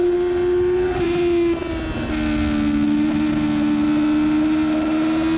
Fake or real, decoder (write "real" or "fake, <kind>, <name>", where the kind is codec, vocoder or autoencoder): real